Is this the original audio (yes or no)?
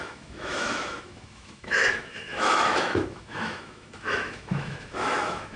no